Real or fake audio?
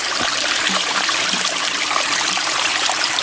fake